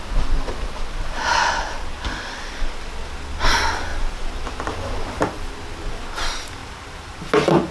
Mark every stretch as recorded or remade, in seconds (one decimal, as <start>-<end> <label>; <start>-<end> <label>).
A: 0.0-3.9 recorded; 3.9-5.2 remade; 5.2-6.6 recorded; 6.6-7.3 remade; 7.3-7.7 recorded